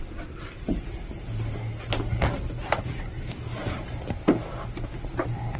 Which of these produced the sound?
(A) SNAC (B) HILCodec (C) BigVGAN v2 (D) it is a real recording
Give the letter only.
D